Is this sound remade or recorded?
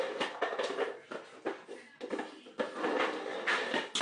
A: recorded